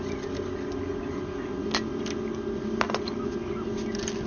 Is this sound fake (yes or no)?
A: no